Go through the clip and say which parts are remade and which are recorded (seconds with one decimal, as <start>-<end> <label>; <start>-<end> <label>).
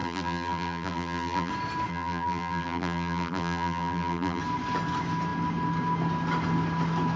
0.0-1.5 remade; 1.5-1.9 recorded; 1.9-4.4 remade; 4.4-7.2 recorded